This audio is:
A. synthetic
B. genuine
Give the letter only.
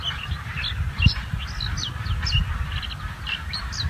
B